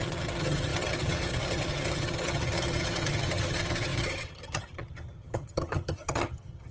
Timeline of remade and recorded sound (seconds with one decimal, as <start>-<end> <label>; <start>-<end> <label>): 0.0-6.7 remade